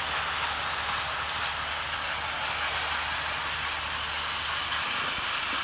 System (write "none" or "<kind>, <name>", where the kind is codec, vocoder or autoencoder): none